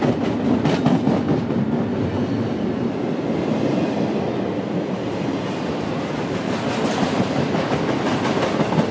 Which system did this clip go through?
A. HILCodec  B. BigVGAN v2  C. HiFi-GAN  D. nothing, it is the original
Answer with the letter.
D